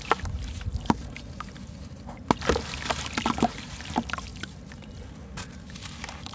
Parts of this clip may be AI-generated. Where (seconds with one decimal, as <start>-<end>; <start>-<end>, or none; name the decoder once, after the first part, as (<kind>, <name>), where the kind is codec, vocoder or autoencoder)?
none